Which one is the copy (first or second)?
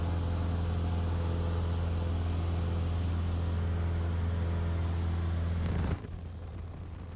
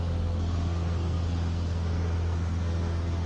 second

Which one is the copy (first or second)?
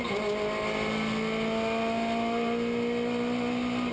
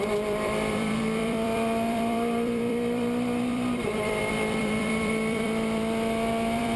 second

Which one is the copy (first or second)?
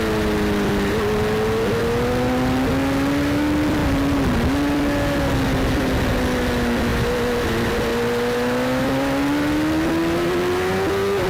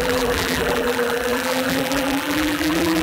second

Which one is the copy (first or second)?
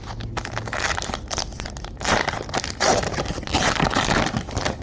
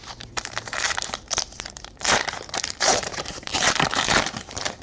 second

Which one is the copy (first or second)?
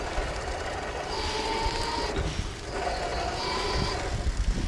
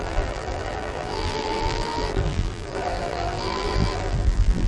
second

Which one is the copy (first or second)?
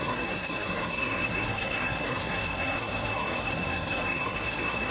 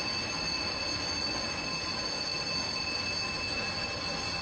first